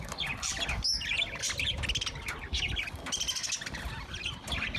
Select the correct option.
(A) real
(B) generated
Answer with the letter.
A